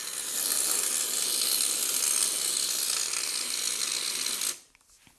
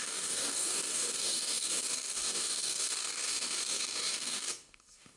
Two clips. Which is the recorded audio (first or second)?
first